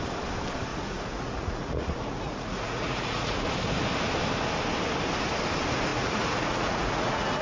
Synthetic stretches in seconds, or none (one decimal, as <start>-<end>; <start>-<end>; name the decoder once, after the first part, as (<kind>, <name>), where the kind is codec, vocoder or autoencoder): 0.7-3.5 (vocoder, Vocos); 5.9-7.4